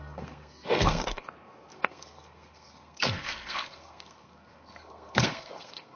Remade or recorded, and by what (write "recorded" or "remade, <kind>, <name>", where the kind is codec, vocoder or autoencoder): remade, codec, SNAC